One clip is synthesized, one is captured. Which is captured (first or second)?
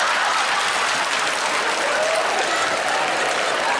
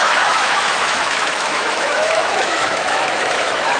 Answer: first